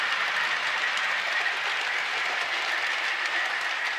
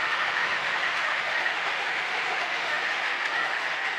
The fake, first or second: second